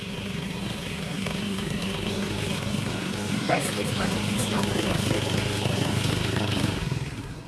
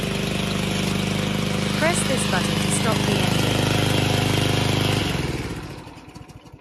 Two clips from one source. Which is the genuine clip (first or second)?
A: second